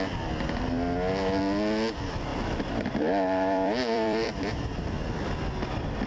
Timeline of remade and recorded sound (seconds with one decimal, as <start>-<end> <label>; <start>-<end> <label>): 0.0-2.3 recorded; 2.3-5.3 remade; 5.3-6.1 recorded